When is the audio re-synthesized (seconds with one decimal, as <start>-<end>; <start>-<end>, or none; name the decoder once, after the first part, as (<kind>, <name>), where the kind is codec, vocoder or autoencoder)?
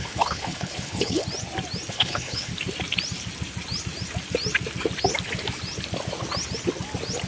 0.0-1.2 (codec, HILCodec); 1.9-2.5